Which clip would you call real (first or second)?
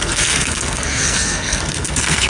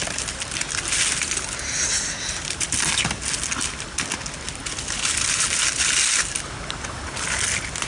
second